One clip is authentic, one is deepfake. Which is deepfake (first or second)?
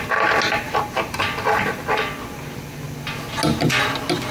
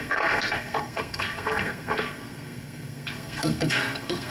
second